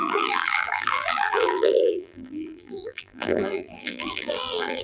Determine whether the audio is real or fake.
fake